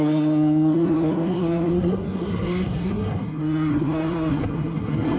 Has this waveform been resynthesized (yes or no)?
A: yes